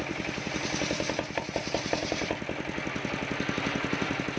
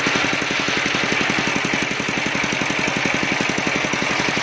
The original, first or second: second